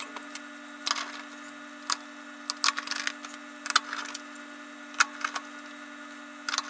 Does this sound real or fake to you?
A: real